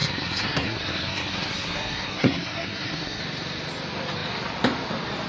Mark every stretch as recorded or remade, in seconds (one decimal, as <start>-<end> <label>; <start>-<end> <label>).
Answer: 0.0-3.2 remade; 3.2-5.3 recorded